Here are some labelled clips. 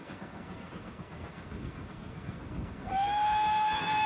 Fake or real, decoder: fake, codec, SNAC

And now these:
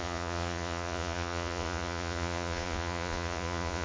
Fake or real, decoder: fake, vocoder, Vocos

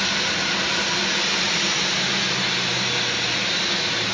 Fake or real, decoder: real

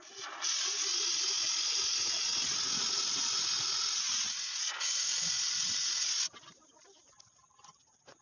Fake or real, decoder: real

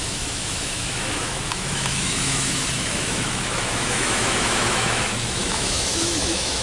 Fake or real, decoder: fake, autoencoder, DAC-VAE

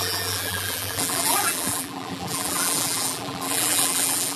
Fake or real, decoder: fake, vocoder, BigVGAN v2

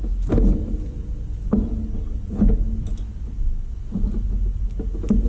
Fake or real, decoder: real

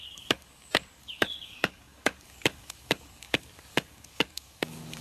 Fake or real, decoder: fake, codec, DAC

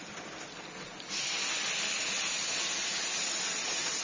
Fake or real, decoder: real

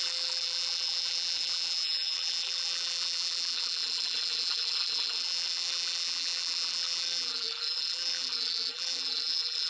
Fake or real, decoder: fake, vocoder, BigVGAN v2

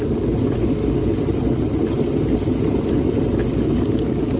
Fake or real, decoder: real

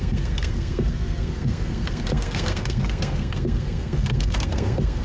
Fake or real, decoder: fake, codec, SNAC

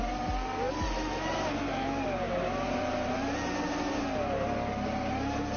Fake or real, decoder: real